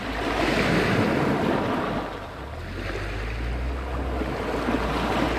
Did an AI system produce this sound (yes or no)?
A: no